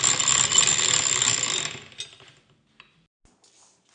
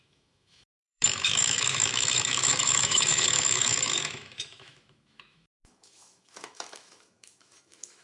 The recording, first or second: first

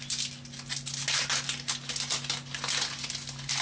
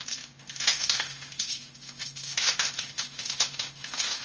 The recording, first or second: first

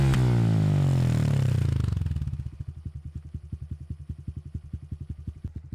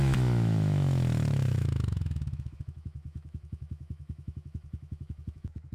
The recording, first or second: first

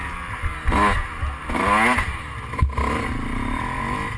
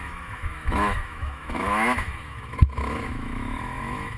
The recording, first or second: first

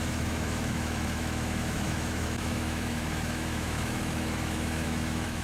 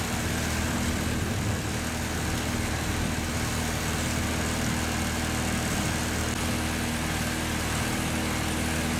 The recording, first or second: second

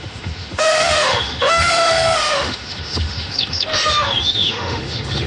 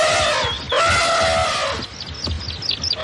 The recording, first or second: second